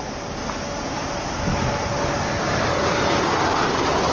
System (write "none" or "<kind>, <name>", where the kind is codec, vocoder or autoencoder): none